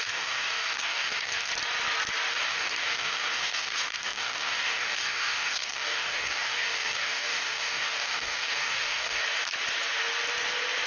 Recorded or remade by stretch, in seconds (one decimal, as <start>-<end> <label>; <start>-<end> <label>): 0.0-1.5 remade; 1.5-2.3 recorded; 2.3-9.2 remade; 9.2-10.9 recorded